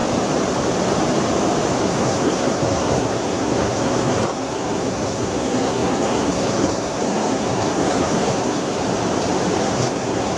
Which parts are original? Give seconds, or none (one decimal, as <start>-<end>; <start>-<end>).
0.0-1.8; 8.8-9.6